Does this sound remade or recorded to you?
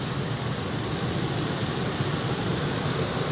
remade